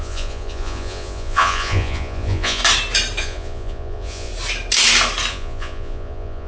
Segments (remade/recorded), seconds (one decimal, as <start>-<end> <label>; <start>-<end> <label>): 0.0-2.6 remade; 2.6-3.2 recorded; 3.2-4.3 remade; 4.3-5.3 recorded; 5.3-6.5 remade